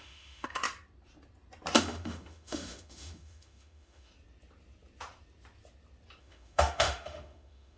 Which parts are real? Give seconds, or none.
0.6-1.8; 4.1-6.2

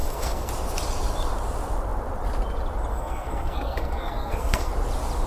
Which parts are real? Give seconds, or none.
0.5-2.9; 4.7-5.3

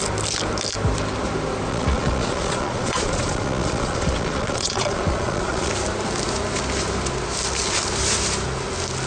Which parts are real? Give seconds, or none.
0.0-1.7; 5.7-9.1

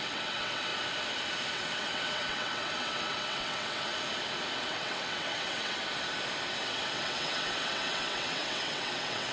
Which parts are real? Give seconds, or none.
0.7-1.5; 3.9-4.6; 5.8-6.6

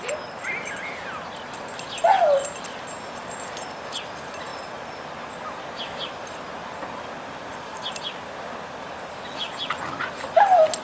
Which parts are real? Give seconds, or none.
0.0-10.8

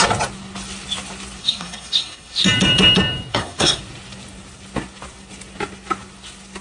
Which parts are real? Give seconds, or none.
0.0-1.4; 2.4-3.3; 3.8-6.6